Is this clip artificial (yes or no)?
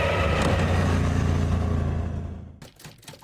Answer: no